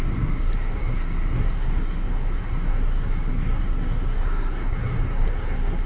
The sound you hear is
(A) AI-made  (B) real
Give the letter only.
A